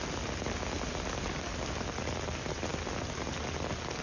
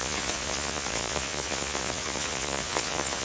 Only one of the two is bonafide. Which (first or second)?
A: first